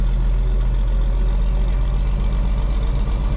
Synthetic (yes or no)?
no